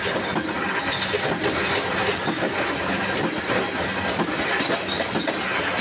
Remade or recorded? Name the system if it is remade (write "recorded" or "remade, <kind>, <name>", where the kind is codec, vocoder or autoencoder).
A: recorded